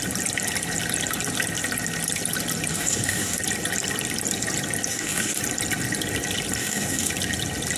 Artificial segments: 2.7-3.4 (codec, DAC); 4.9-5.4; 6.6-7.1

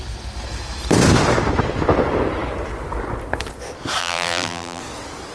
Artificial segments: 4.0-4.8 (vocoder, BigVGAN v2)

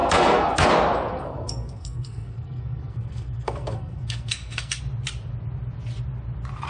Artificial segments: 0.0-0.7 (codec, SNAC); 1.1-4.8

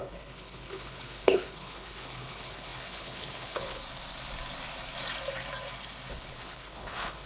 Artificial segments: 0.0-3.8 (codec, HILCodec); 6.1-7.3